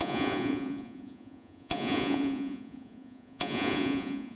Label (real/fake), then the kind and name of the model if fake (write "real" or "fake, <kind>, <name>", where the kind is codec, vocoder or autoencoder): fake, vocoder, Vocos